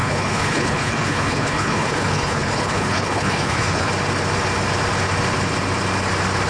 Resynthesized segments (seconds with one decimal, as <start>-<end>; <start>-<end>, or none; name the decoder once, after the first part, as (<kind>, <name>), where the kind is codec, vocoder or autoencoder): 0.0-3.9 (codec, HILCodec)